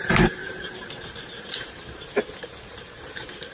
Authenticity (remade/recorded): remade